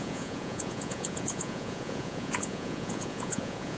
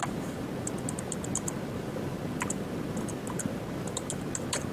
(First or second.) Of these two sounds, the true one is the second